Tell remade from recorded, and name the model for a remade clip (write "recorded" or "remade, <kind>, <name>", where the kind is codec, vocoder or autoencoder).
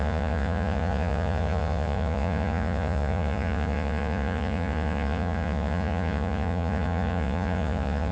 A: remade, vocoder, Vocos